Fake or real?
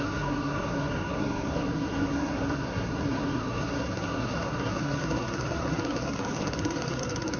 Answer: fake